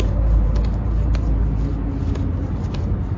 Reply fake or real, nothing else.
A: real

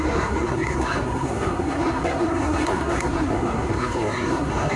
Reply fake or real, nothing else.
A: fake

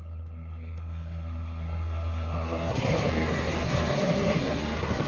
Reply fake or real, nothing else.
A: fake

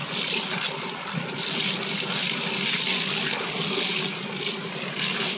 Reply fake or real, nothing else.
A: real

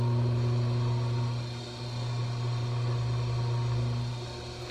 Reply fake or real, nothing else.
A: real